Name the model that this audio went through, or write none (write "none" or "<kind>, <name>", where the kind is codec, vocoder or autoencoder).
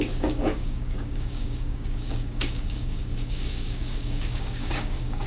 codec, DAC